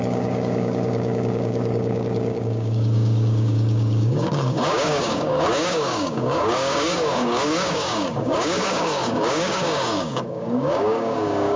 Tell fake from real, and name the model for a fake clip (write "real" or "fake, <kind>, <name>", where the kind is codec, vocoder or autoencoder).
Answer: fake, codec, DAC